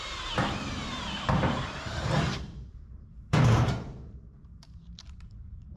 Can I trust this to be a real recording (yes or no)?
no